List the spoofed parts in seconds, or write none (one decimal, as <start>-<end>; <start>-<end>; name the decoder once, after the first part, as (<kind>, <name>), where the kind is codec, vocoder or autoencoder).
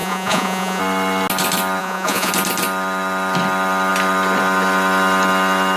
0.0-0.8 (vocoder, Vocos); 1.8-2.3